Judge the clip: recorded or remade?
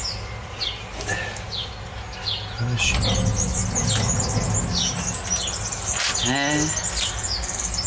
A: recorded